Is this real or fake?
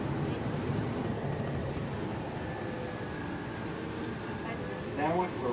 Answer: real